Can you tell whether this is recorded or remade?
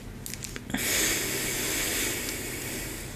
recorded